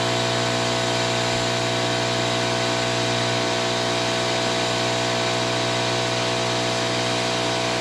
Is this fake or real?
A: real